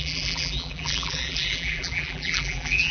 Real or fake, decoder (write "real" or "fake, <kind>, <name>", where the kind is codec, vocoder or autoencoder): fake, vocoder, BigVGAN v2